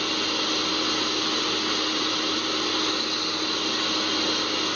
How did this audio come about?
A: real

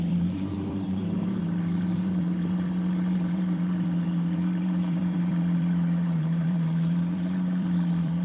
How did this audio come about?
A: fake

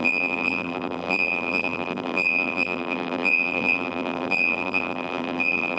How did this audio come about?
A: fake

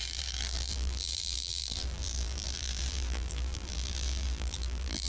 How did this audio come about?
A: fake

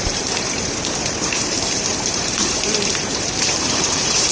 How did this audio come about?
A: fake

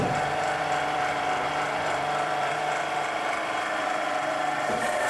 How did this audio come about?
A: fake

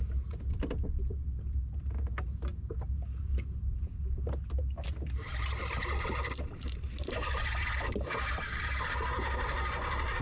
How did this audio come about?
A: real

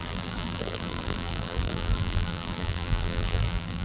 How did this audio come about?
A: fake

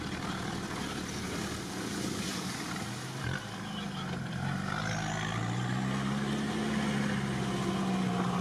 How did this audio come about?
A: real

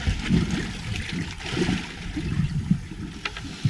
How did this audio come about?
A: real